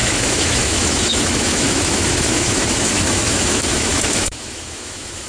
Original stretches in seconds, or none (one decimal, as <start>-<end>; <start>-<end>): none

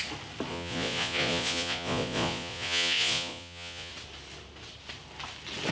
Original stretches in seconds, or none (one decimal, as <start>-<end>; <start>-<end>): 0.0-0.5; 3.9-5.7

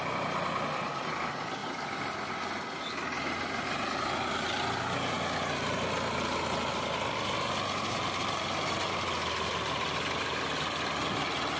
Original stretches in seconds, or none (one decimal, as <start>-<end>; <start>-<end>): 0.0-11.6

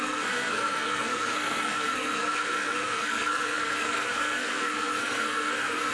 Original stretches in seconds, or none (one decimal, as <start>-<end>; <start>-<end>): none

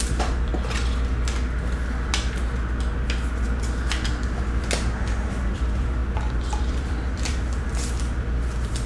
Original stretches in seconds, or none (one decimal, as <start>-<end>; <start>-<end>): 0.5-5.5; 6.0-6.6

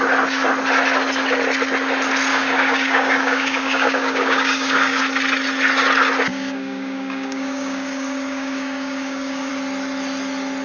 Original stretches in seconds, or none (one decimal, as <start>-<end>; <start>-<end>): 0.0-2.3; 5.0-6.3; 9.5-10.6

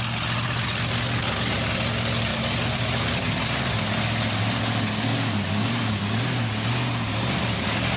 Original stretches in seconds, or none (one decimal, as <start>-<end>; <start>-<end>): 0.0-8.0

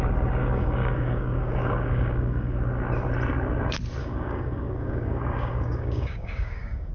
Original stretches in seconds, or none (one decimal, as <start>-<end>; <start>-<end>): 0.0-0.4; 2.6-4.0